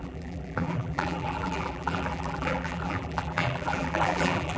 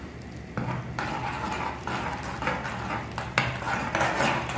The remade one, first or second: first